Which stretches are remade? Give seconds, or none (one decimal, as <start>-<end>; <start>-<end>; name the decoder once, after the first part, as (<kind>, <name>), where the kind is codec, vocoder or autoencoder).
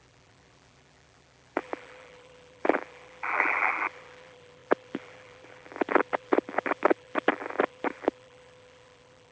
0.0-9.3 (vocoder, BigVGAN v2)